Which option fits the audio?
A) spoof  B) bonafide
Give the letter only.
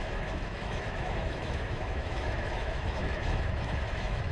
A